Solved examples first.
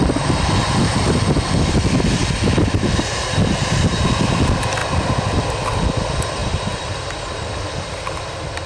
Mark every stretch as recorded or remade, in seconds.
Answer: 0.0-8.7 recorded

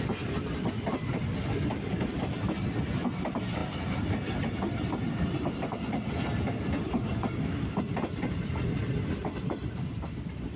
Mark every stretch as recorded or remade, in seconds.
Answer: 0.0-10.6 recorded

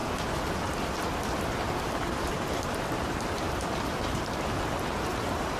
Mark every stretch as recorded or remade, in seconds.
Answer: 0.0-3.4 remade; 3.4-5.6 recorded

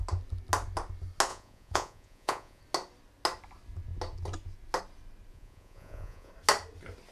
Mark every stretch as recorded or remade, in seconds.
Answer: 0.0-1.3 recorded; 1.3-2.6 remade; 2.6-5.3 recorded; 5.3-6.3 remade; 6.3-7.1 recorded